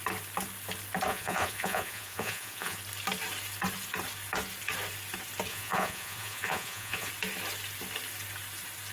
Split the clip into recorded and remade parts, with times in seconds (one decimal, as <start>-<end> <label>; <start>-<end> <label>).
0.0-1.1 recorded; 1.1-2.8 remade; 2.8-5.5 recorded; 5.5-7.1 remade; 7.1-8.9 recorded